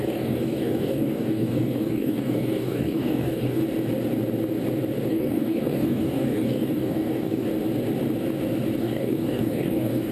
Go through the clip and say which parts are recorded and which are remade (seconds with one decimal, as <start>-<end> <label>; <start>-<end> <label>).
0.0-3.6 remade; 3.6-5.1 recorded; 5.1-7.5 remade; 7.5-8.8 recorded; 8.8-10.1 remade